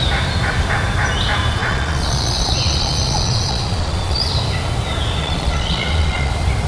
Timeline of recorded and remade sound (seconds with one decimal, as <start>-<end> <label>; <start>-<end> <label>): 0.0-1.6 recorded; 1.6-4.3 remade; 4.3-5.2 recorded; 5.2-6.3 remade; 6.3-6.7 recorded